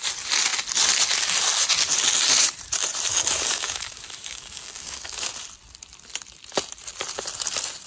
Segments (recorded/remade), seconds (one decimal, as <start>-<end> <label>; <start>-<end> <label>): 0.0-3.1 recorded; 3.1-5.3 remade; 5.3-7.9 recorded